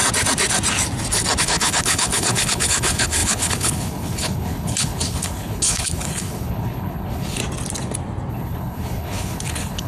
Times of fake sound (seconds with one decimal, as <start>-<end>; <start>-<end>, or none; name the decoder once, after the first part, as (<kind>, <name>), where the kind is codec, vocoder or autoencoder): 1.4-7.4 (codec, HILCodec); 8.3-9.9